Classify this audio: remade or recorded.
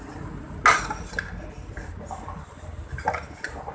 recorded